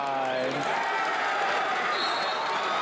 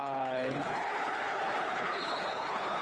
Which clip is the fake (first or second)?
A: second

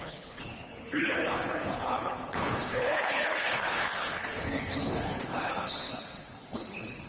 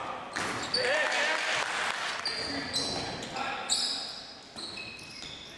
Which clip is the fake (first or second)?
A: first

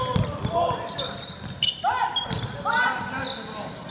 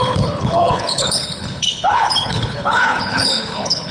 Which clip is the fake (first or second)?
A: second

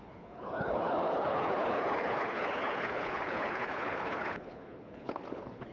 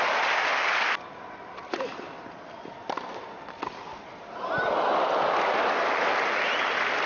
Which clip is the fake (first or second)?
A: first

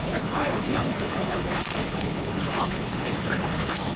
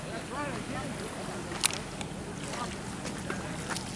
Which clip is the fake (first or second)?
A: first